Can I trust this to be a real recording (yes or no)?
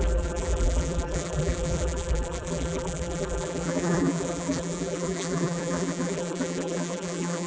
no